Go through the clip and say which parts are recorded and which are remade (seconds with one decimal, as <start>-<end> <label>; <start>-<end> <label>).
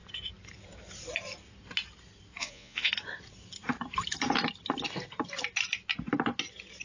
0.0-2.4 recorded; 2.4-2.9 remade; 2.9-6.8 recorded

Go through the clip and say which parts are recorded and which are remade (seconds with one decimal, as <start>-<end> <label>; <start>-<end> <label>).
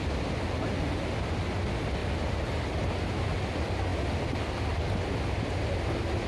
0.0-2.0 recorded; 2.0-2.6 remade; 2.6-6.3 recorded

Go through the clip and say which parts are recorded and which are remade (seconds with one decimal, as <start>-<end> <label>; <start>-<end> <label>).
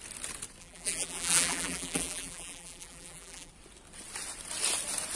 0.0-0.6 recorded; 0.6-3.5 remade; 3.5-5.2 recorded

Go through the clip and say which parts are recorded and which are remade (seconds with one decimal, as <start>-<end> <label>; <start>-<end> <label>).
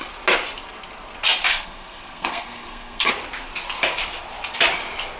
0.0-1.5 recorded; 1.5-3.1 remade; 3.1-5.2 recorded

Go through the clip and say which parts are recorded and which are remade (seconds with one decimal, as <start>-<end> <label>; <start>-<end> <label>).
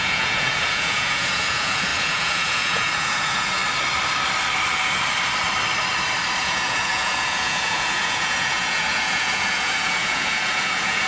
0.0-3.6 remade; 3.6-6.4 recorded; 6.4-11.1 remade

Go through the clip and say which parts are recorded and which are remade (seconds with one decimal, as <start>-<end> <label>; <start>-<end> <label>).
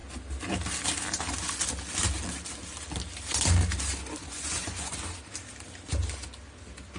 0.0-4.2 recorded; 4.2-4.9 remade; 4.9-7.0 recorded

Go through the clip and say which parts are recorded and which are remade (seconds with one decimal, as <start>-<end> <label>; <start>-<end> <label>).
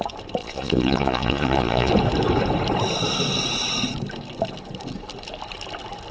0.0-0.4 recorded; 0.4-1.9 remade; 1.9-6.1 recorded